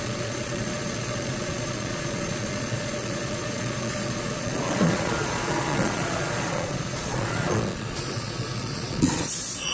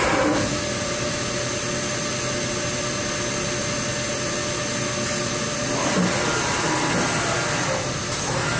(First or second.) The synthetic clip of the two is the first